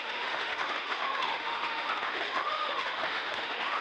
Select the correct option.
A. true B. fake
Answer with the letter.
B